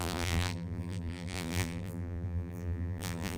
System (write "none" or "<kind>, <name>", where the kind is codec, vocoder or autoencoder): vocoder, BigVGAN v2